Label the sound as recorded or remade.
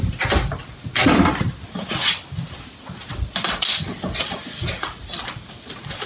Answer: recorded